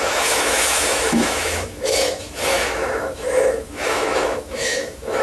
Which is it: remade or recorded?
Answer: remade